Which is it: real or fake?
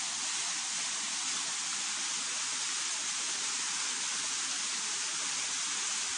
real